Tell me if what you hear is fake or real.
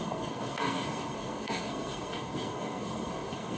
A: fake